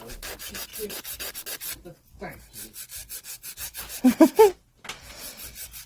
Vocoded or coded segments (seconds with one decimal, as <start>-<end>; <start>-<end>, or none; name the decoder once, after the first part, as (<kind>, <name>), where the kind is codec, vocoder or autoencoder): 0.7-1.4 (vocoder, BigVGAN v2); 3.0-3.8